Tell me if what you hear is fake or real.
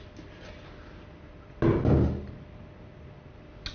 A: real